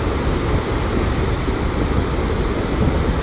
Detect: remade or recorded recorded